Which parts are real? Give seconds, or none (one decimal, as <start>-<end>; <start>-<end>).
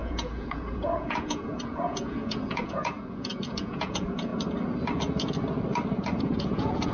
4.3-6.2